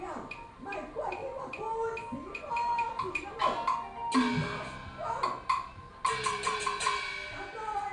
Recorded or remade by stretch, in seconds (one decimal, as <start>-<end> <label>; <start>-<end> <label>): 0.0-7.9 recorded